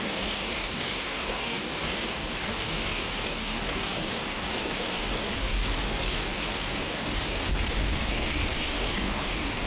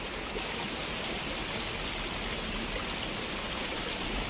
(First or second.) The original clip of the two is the second